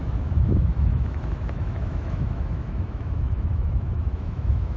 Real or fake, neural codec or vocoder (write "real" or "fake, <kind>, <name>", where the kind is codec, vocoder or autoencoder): fake, autoencoder, DAC-VAE